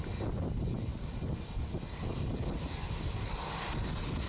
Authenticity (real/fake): real